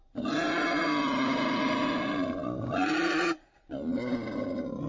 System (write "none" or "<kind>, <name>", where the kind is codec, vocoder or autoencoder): none